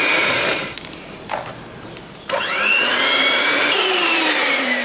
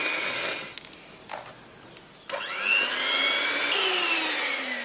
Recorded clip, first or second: second